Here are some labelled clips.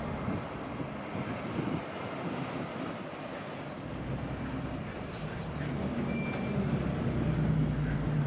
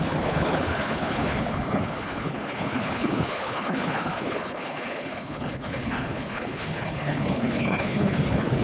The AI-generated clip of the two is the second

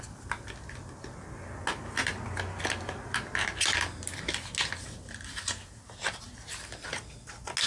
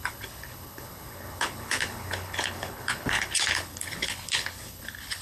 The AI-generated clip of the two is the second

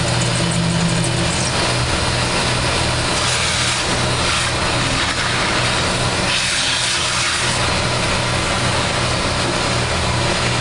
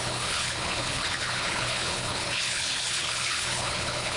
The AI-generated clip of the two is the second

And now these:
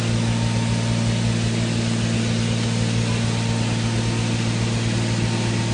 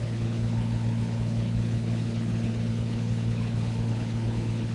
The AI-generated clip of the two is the second